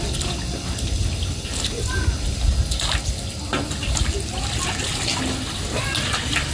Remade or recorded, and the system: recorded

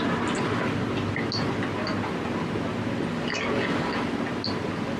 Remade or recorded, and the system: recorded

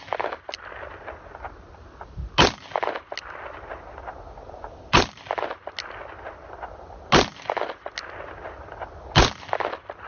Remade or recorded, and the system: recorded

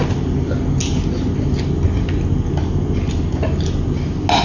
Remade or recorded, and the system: recorded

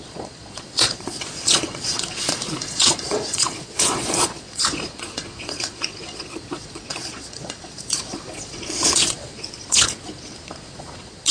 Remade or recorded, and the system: remade, vocoder, Vocos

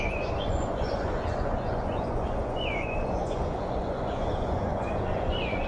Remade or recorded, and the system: remade, vocoder, Vocos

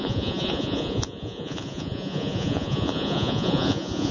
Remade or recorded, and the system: remade, vocoder, Vocos